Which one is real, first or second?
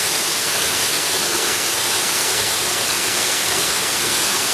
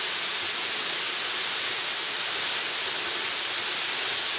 second